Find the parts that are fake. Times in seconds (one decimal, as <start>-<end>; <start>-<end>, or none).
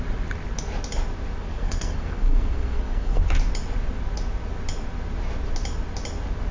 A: 1.5-3.2